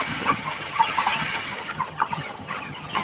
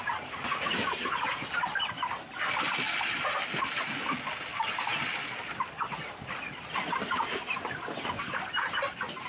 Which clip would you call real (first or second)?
second